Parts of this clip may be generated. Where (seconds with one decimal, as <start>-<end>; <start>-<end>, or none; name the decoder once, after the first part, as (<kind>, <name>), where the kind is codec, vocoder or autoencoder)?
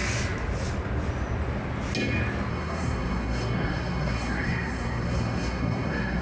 2.5-6.2 (codec, SNAC)